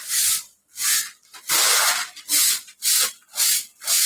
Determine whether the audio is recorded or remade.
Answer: recorded